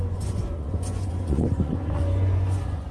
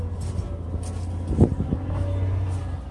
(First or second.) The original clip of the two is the second